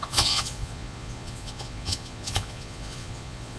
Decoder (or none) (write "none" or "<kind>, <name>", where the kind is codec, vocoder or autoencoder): vocoder, Vocos